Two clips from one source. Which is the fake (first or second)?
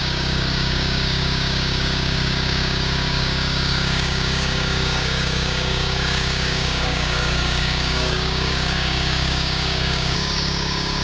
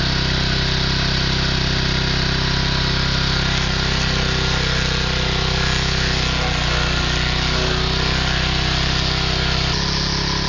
first